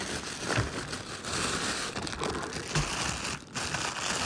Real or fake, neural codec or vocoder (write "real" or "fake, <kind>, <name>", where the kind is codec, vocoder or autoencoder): real